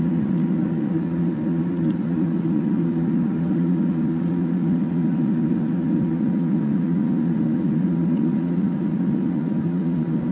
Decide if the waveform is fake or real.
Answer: fake